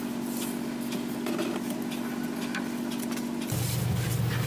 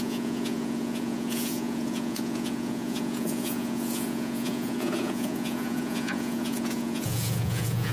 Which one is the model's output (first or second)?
second